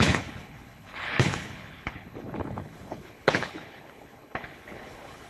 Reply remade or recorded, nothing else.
remade